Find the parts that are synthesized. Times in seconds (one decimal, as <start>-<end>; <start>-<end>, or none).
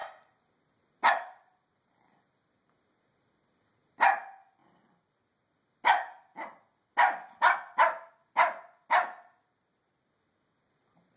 none